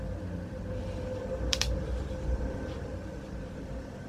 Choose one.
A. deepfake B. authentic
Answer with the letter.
A